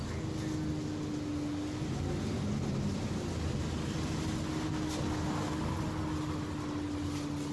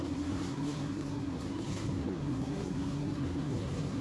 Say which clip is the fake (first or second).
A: second